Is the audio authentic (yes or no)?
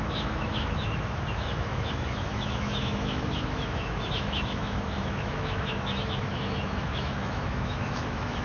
no